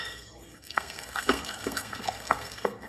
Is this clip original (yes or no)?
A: no